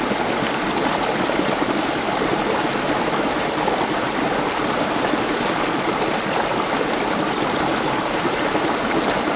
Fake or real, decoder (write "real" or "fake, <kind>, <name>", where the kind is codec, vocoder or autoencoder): real